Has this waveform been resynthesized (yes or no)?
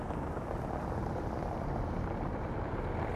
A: no